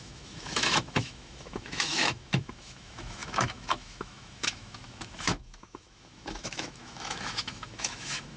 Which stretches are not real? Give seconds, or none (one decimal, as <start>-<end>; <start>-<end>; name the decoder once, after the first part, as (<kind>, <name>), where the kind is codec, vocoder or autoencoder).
0.0-8.4 (autoencoder, DAC-VAE)